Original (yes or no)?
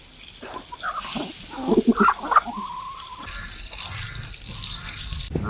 yes